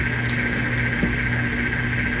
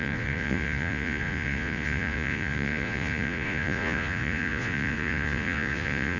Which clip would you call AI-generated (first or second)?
second